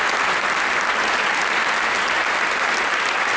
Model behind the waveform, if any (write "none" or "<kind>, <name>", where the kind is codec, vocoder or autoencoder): none